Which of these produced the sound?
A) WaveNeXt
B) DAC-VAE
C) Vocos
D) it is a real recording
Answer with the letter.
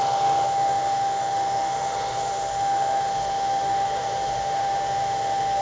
B